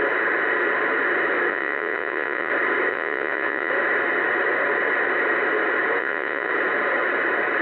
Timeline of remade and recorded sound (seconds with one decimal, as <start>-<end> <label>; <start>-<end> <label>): 0.0-1.5 recorded; 1.5-2.5 remade; 2.5-2.9 recorded; 2.9-3.7 remade; 3.7-6.0 recorded; 6.0-6.5 remade; 6.5-7.6 recorded